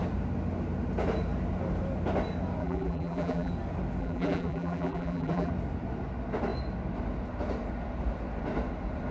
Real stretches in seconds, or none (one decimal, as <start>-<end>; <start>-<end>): 0.0-2.6; 3.5-4.0; 5.5-9.1